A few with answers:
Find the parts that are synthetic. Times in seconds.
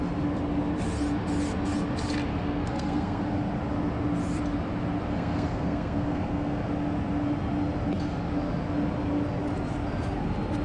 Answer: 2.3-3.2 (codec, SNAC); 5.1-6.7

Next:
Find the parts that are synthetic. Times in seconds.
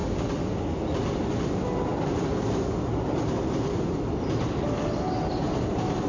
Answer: none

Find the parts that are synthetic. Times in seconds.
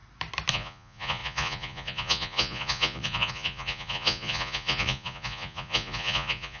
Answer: 0.5-6.6 (vocoder, Vocos)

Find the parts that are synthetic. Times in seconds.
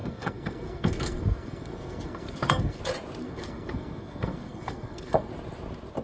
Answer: 0.0-2.8 (codec, SNAC); 3.2-5.3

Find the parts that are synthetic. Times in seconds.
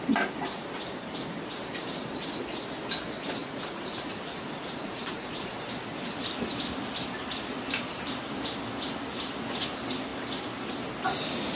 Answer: 3.4-5.5 (vocoder, Vocos)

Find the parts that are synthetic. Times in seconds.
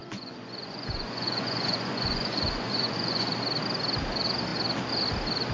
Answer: 0.0-3.3 (vocoder, Vocos)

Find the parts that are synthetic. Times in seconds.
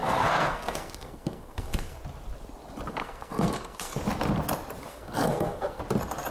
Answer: 0.0-2.0 (codec, SNAC); 2.9-4.0; 4.9-5.8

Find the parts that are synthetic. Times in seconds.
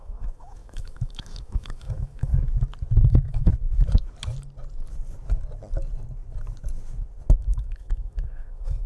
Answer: 0.0-2.3 (autoencoder, DAC-VAE); 3.0-3.5; 7.4-8.9